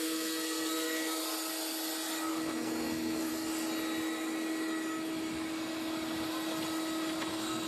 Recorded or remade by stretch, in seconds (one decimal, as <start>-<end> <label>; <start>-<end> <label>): 0.0-1.2 remade; 1.2-2.3 recorded; 2.3-3.3 remade; 3.3-7.3 recorded; 7.3-7.7 remade